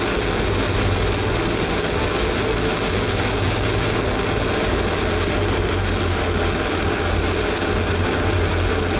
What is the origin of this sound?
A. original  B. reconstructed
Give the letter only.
A